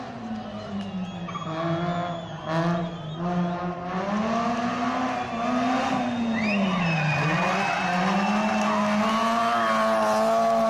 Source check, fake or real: real